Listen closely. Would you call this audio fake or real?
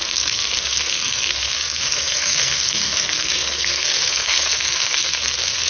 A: fake